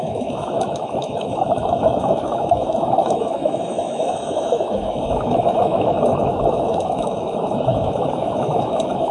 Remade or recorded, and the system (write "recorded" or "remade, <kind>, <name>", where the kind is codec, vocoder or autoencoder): remade, autoencoder, DAC-VAE